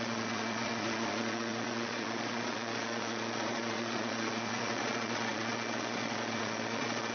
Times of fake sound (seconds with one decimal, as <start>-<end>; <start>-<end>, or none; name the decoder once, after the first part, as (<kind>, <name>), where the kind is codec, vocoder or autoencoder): 0.0-7.1 (vocoder, Vocos)